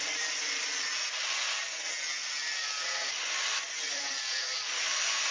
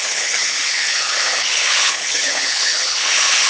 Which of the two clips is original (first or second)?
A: first